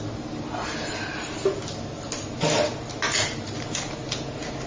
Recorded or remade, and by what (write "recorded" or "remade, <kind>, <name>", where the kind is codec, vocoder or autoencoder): recorded